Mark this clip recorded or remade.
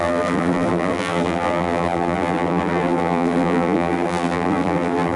remade